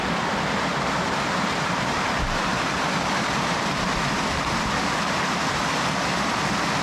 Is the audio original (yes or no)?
yes